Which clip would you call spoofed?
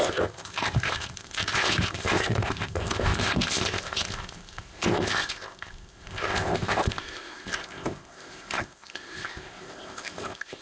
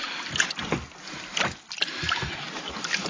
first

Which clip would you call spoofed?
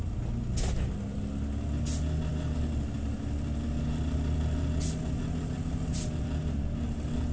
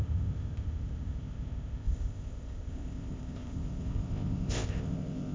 second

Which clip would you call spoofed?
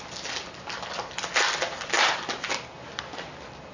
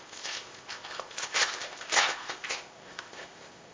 second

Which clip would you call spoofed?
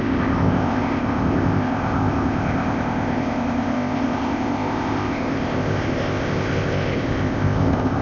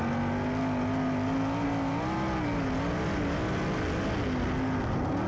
first